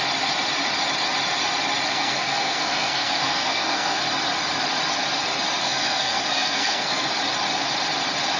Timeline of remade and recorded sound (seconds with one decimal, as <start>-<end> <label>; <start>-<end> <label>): 0.0-1.9 recorded; 1.9-4.0 remade; 4.0-5.6 recorded; 5.6-7.1 remade; 7.1-8.4 recorded